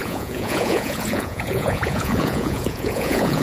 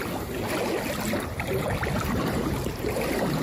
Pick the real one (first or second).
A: second